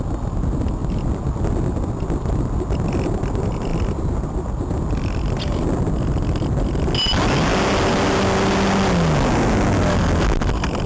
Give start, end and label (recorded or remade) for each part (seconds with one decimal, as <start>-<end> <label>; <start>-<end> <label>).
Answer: 0.0-0.8 recorded; 0.8-1.5 remade; 1.5-3.7 recorded; 3.7-4.5 remade; 4.5-10.9 recorded